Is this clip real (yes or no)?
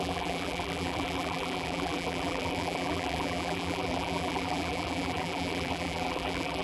no